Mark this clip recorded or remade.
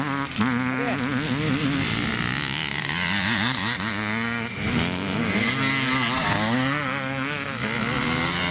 recorded